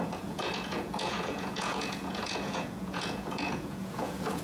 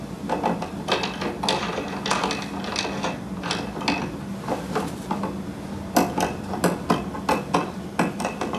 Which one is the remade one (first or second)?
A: first